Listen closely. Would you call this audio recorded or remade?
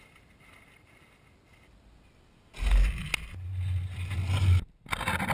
recorded